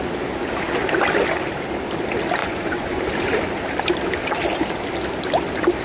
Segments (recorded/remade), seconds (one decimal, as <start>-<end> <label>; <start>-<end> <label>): 0.0-2.4 recorded; 2.4-3.0 remade; 3.0-5.8 recorded